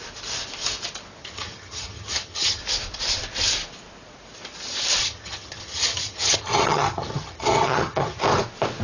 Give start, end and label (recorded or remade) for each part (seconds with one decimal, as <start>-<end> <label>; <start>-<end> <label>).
0.0-1.2 recorded; 1.2-2.6 remade; 2.6-5.0 recorded; 5.0-8.2 remade; 8.2-8.8 recorded